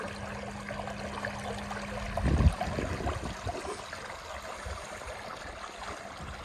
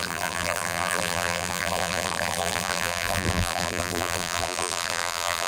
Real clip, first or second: first